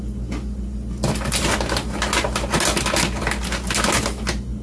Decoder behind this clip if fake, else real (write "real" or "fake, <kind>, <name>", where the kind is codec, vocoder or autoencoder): real